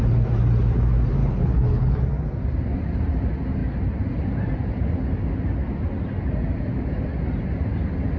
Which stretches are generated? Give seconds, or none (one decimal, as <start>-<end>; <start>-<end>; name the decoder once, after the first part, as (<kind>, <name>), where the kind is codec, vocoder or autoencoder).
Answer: 1.2-2.0 (codec, HILCodec)